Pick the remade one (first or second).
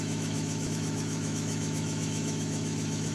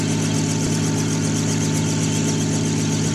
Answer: first